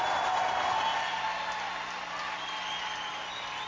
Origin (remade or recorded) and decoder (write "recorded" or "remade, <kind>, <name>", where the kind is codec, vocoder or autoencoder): recorded